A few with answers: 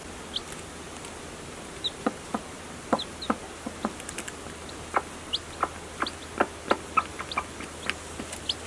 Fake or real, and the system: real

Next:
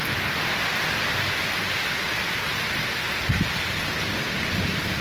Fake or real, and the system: real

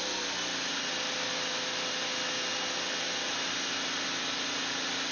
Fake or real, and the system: real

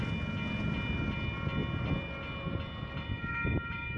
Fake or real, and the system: real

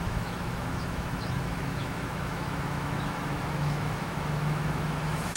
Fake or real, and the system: fake, autoencoder, DAC-VAE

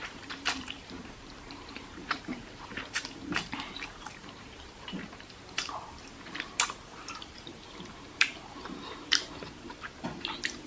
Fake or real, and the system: fake, vocoder, BigVGAN v2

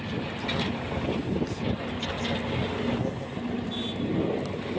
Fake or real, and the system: real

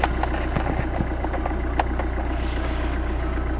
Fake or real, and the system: real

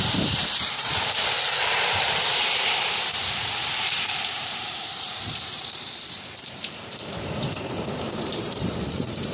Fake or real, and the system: fake, vocoder, BigVGAN v2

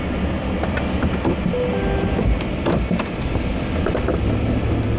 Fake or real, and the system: real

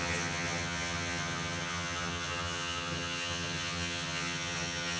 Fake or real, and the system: fake, vocoder, HiFi-GAN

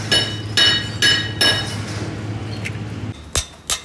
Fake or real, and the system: real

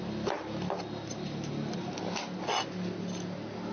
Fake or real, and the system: real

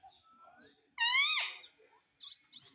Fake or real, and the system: real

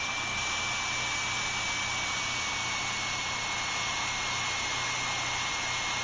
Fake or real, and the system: real